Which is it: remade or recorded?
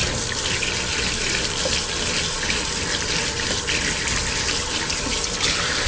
recorded